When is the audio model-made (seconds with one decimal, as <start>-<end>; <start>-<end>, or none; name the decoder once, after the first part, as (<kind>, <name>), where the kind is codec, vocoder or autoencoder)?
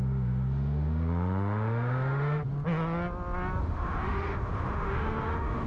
0.0-2.4 (autoencoder, DAC-VAE); 3.6-5.7